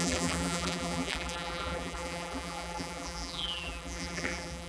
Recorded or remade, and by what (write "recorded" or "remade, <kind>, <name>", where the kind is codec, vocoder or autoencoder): remade, vocoder, BigVGAN v2